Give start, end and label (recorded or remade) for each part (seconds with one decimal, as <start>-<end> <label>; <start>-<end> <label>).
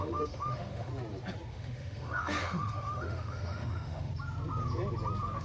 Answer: 0.0-0.9 remade; 0.9-1.5 recorded; 1.5-4.1 remade; 4.1-5.4 recorded